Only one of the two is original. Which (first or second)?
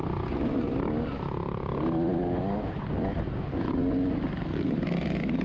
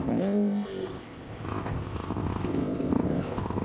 first